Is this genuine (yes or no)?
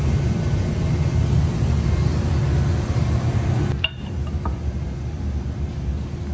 yes